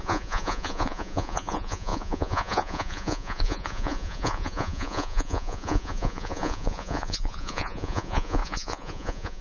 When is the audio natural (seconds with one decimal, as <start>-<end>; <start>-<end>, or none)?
none